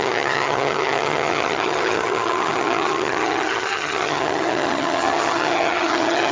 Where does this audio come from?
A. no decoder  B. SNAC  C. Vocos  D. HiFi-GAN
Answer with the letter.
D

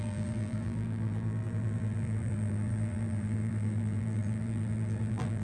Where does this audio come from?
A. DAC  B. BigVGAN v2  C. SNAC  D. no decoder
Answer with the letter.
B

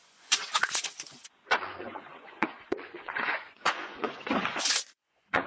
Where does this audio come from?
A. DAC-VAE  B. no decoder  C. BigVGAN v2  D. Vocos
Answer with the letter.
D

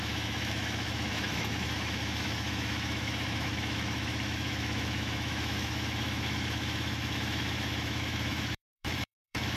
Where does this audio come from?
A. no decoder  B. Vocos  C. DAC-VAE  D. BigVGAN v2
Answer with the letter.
C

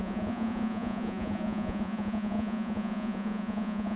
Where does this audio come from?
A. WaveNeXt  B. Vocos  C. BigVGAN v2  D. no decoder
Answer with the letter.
B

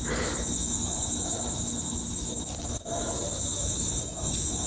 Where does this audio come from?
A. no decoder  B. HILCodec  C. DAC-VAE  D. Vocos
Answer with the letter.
C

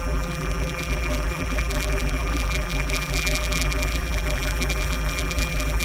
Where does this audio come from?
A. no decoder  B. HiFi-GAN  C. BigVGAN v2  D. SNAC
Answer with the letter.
C